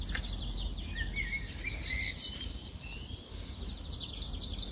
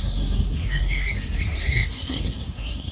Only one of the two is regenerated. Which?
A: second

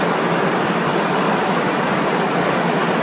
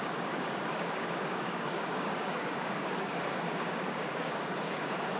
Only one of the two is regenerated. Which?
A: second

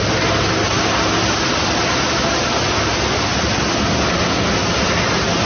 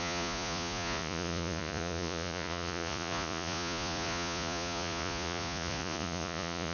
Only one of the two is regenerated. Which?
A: second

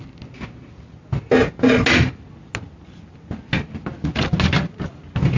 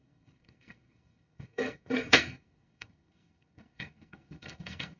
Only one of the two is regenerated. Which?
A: second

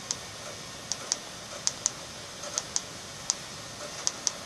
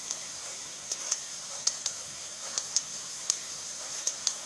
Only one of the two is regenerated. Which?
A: second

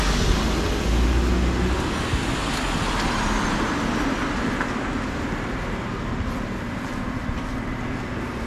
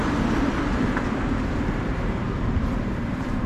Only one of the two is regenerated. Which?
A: second